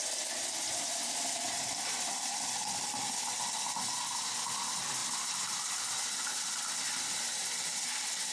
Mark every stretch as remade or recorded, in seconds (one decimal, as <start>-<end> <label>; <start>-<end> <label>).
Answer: 0.0-8.3 recorded